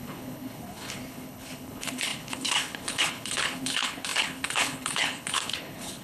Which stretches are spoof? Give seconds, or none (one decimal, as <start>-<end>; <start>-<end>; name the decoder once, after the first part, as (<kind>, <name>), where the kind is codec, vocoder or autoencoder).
0.0-6.0 (codec, HILCodec)